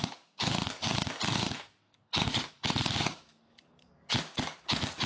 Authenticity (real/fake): fake